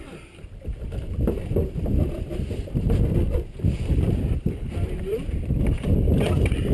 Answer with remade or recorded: remade